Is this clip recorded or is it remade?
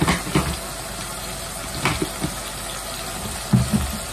recorded